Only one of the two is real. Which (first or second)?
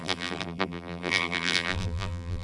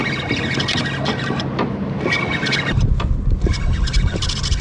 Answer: second